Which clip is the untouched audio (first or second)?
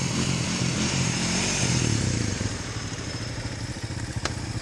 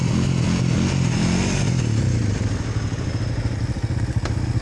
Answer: second